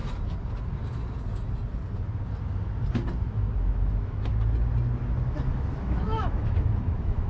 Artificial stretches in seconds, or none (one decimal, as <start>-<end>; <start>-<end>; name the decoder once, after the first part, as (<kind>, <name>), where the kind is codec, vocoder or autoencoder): 3.3-4.3 (autoencoder, DAC-VAE); 5.3-7.3